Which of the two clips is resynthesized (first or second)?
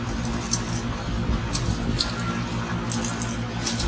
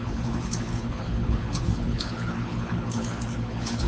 second